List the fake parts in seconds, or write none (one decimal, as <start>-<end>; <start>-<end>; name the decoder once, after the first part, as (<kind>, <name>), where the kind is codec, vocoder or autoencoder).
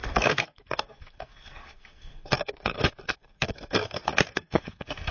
0.0-5.1 (codec, SNAC)